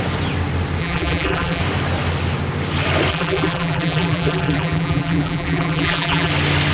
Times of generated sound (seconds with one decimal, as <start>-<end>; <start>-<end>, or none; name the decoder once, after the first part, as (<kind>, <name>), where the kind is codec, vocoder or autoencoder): 0.8-1.6 (vocoder, BigVGAN v2); 3.1-6.3

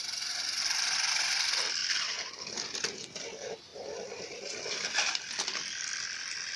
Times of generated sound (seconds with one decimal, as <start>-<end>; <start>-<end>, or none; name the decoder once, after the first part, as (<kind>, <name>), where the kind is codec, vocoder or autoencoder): 1.8-2.8 (vocoder, BigVGAN v2); 3.7-4.9

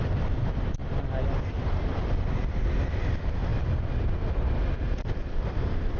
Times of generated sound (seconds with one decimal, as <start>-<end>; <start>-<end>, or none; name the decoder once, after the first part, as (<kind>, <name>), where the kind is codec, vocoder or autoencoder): none

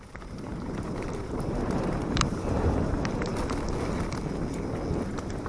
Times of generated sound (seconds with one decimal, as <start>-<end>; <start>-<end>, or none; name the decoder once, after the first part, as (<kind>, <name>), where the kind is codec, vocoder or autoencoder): 0.0-3.3 (vocoder, BigVGAN v2); 5.1-5.5

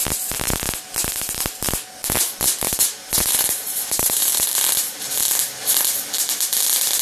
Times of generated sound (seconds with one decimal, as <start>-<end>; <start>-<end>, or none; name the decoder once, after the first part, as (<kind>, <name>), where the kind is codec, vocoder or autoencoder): 2.7-5.1 (vocoder, BigVGAN v2)